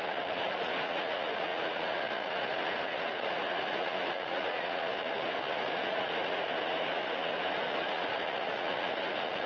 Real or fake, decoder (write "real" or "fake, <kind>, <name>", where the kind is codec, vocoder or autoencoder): fake, vocoder, Vocos